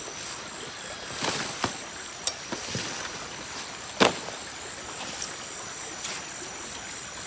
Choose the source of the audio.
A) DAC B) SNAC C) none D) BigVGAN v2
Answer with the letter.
C